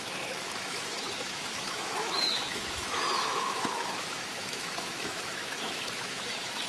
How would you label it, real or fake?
fake